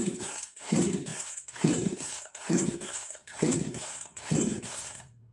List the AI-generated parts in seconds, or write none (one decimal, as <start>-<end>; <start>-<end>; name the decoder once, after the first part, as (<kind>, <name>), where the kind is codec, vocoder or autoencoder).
0.0-5.3 (codec, SNAC)